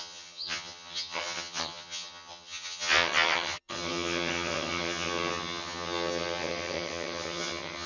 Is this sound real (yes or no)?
no